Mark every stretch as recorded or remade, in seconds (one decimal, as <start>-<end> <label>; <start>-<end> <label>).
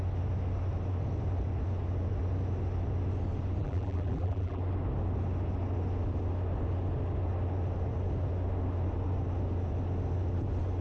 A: 0.0-3.6 recorded; 3.6-4.6 remade; 4.6-10.8 recorded